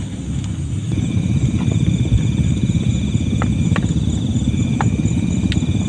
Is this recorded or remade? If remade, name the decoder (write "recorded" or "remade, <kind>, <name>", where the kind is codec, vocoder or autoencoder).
recorded